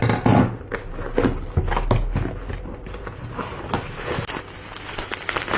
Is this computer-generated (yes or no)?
no